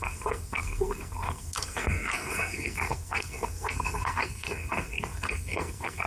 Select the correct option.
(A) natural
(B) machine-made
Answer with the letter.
B